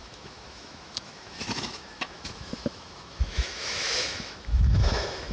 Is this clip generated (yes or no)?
yes